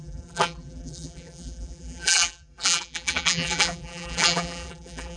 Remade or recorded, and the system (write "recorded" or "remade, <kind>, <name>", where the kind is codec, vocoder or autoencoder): remade, vocoder, BigVGAN v2